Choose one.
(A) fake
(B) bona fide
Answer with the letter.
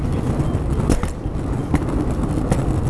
B